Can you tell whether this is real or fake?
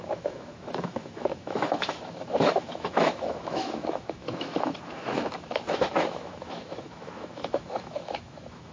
fake